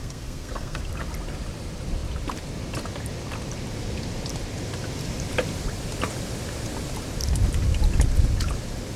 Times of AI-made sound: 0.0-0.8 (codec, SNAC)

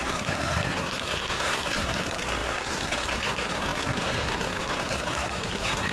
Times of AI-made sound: 0.0-5.9 (codec, SNAC)

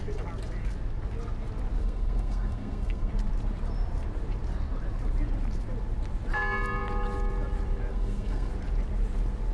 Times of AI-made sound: 1.8-3.1 (codec, SNAC); 7.9-8.5